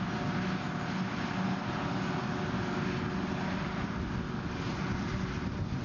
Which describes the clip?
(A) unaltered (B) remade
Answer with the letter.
A